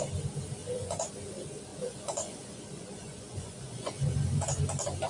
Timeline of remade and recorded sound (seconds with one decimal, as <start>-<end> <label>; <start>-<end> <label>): 0.0-0.6 recorded; 0.6-1.1 remade; 1.1-1.7 recorded; 1.7-4.6 remade; 4.6-5.1 recorded